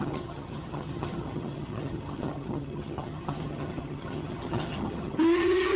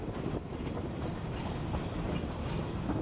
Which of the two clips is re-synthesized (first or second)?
first